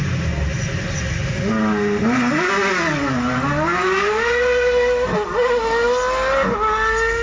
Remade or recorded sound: recorded